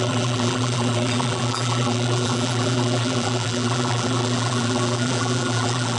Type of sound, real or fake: fake